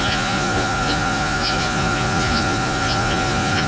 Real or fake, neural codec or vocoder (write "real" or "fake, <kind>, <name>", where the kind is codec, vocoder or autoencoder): fake, vocoder, Vocos